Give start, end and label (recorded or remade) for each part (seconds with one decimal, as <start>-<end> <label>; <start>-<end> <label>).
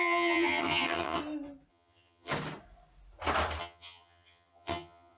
0.0-1.2 remade; 1.2-1.7 recorded; 1.7-2.3 remade; 2.3-3.6 recorded; 3.6-5.2 remade